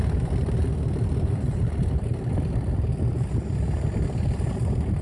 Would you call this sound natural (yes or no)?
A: yes